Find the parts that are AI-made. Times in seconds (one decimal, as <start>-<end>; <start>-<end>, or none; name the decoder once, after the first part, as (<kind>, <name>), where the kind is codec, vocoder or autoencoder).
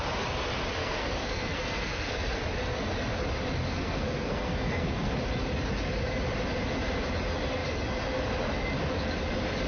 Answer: 0.8-2.4 (codec, SNAC); 3.7-5.1